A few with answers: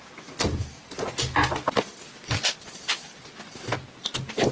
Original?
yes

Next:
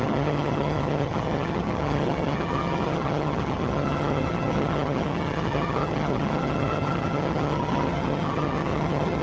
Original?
no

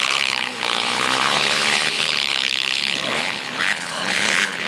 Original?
no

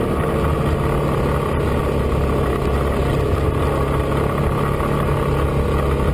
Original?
yes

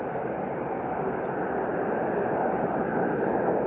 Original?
yes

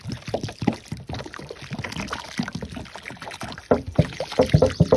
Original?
yes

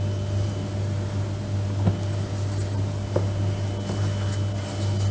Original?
yes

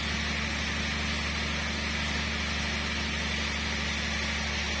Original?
yes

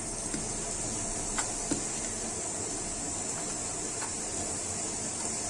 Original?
yes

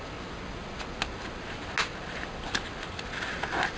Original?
yes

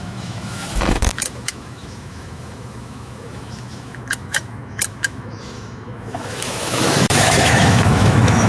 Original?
no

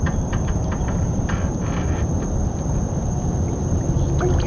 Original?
yes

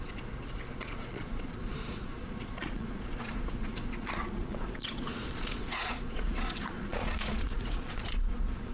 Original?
no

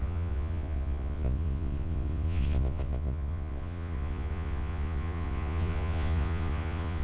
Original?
no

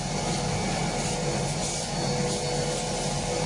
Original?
yes